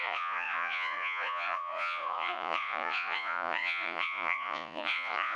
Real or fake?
fake